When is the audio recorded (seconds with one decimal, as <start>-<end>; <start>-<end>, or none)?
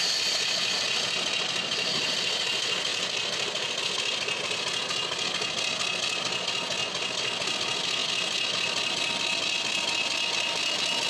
0.0-2.9; 3.8-11.1